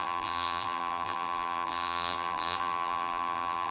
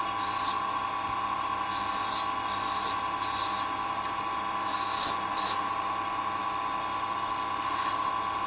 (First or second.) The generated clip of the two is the first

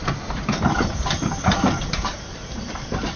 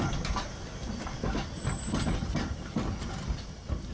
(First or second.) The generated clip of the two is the first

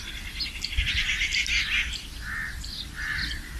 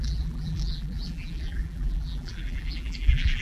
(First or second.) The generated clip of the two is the second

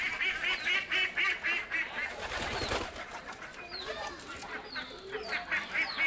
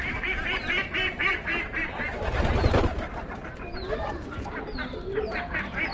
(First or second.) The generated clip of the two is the second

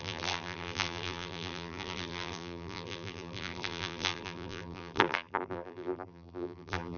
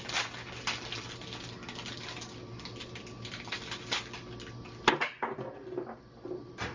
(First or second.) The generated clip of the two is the first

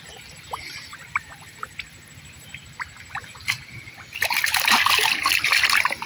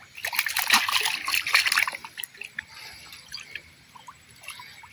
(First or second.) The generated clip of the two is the first